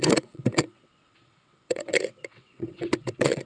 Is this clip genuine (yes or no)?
no